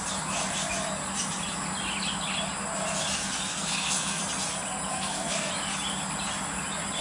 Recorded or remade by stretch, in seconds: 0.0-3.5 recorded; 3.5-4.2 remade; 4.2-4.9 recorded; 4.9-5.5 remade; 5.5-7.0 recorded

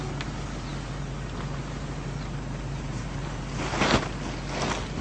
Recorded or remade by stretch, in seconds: 0.0-5.0 recorded

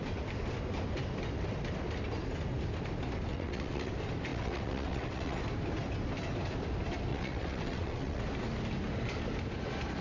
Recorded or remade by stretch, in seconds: 0.0-3.3 recorded; 3.3-3.9 remade; 3.9-4.3 recorded; 4.3-5.4 remade; 5.4-7.1 recorded; 7.1-8.2 remade; 8.2-10.0 recorded

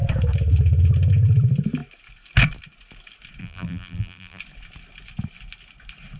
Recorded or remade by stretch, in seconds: 0.0-3.4 recorded; 3.4-4.4 remade; 4.4-6.2 recorded

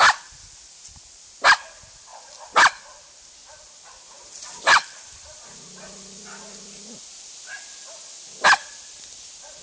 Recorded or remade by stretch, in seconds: 0.0-9.6 recorded

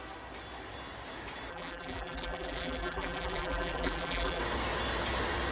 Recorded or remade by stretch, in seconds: 0.0-1.5 recorded; 1.5-4.4 remade; 4.4-5.5 recorded

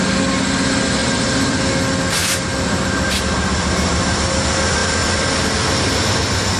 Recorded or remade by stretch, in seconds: 0.0-1.0 recorded; 1.0-1.6 remade; 1.6-6.6 recorded

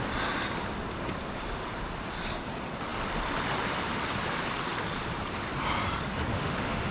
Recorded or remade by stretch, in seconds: 0.0-6.3 recorded; 6.3-6.9 remade